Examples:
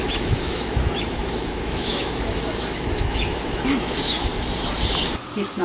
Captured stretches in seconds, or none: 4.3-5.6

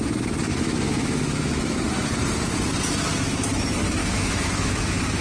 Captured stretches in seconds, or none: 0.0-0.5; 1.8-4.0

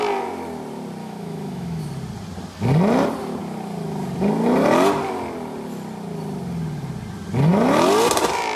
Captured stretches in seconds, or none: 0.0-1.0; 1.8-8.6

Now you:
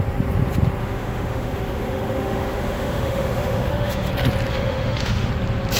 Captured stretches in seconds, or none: 0.0-0.8; 4.1-4.5; 5.3-5.8

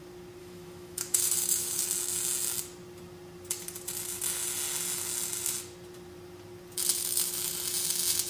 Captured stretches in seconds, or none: 0.0-0.4; 1.8-7.0; 7.5-8.3

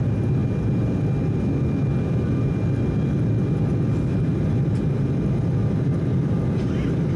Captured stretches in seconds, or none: 0.0-7.2

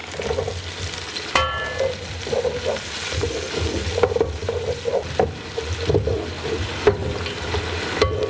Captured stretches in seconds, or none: 0.0-8.3

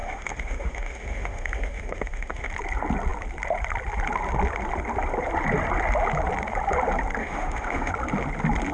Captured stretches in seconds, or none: 2.5-7.2; 7.9-8.7